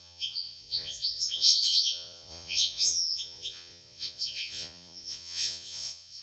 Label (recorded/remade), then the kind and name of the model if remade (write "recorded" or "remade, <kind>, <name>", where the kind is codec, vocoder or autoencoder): remade, vocoder, Vocos